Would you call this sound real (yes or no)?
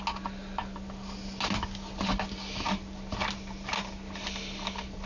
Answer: yes